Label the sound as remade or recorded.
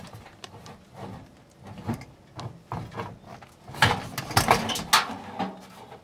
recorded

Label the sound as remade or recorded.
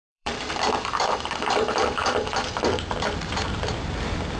remade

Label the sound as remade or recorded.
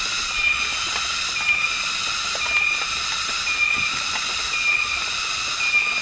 recorded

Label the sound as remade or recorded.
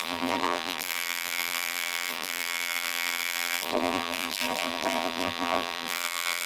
remade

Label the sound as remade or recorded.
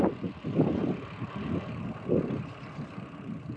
recorded